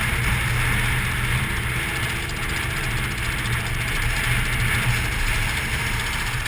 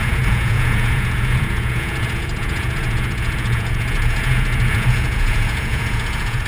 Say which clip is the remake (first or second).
second